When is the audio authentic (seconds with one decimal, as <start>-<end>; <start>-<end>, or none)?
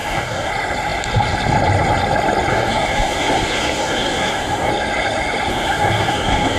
0.5-2.5; 4.7-5.5